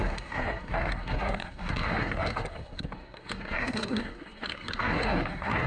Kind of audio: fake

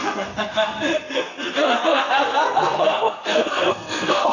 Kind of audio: fake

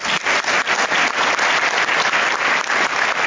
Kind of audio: real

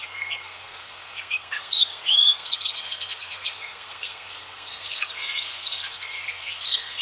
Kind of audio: fake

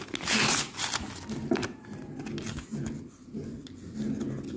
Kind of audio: real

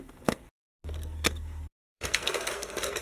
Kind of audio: fake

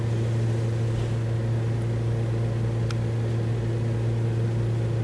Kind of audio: real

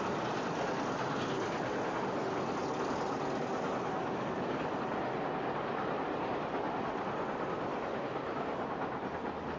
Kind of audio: real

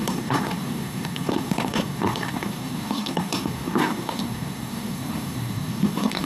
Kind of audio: fake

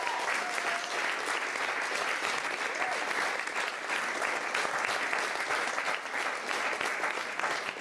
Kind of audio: real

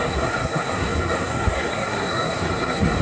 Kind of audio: fake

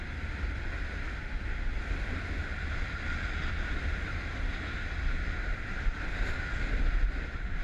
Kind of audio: real